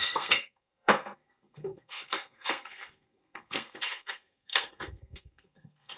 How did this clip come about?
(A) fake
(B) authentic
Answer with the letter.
A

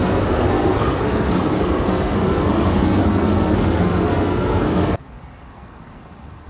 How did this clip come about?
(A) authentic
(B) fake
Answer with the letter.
B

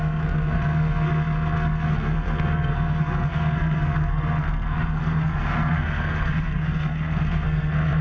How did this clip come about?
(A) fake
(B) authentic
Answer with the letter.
A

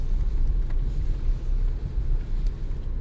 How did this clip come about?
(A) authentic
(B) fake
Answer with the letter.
A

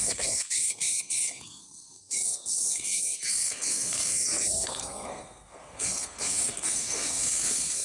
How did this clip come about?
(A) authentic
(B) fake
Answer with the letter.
B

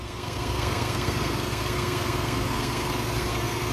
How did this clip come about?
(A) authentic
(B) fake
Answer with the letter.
B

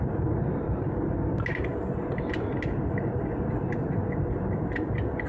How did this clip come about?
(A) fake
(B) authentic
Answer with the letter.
B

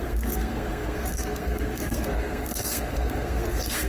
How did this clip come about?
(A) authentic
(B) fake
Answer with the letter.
B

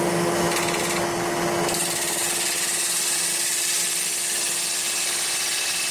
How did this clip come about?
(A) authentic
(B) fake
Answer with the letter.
A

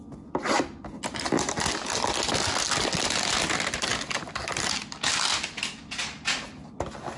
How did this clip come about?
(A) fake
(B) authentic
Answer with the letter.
B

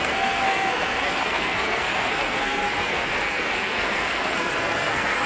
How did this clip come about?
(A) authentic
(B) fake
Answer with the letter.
B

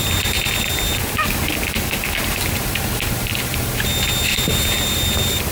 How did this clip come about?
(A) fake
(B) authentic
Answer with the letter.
B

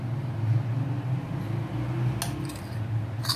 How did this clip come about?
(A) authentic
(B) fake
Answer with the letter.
A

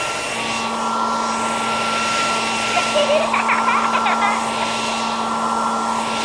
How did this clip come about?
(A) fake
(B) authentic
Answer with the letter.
B